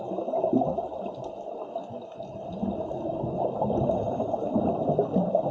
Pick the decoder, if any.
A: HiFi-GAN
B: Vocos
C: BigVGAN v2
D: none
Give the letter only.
D